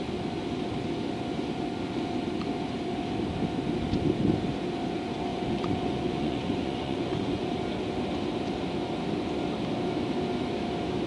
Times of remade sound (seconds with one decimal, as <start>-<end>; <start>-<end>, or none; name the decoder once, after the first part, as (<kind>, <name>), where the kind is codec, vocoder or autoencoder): 5.3-7.5 (vocoder, Vocos)